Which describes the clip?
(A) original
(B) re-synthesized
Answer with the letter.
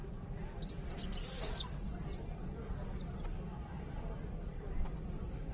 A